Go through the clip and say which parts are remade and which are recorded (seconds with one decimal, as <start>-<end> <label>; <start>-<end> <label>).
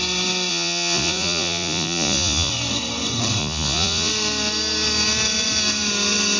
0.0-0.5 recorded; 0.5-2.5 remade; 2.5-3.4 recorded; 3.4-4.1 remade; 4.1-6.4 recorded